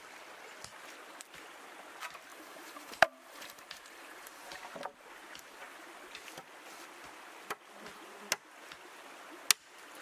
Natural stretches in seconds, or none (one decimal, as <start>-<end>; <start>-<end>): 0.0-2.3; 4.5-10.0